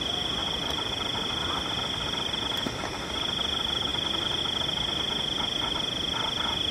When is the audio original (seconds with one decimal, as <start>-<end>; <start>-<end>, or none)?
0.0-0.4; 0.9-6.7